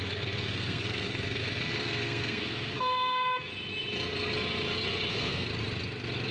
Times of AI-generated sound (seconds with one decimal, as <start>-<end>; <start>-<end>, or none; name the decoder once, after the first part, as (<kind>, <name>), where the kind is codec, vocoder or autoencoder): 0.0-3.5 (codec, SNAC); 5.1-5.5